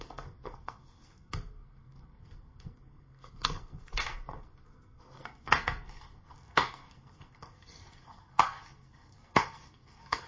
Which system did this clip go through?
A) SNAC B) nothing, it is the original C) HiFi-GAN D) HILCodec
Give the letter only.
A